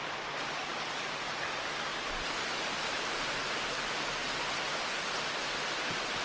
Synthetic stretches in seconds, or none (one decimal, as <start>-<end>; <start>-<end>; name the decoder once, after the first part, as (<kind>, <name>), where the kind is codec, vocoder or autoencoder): 1.9-3.5 (vocoder, BigVGAN v2)